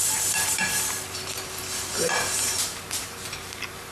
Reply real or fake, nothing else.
fake